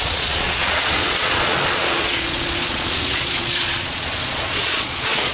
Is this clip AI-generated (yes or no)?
yes